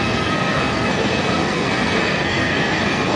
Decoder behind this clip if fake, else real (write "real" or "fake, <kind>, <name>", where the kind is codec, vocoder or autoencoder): fake, codec, SNAC